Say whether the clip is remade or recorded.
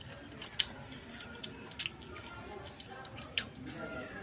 recorded